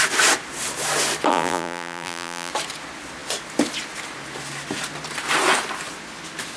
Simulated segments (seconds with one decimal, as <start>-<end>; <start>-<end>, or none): 1.3-2.5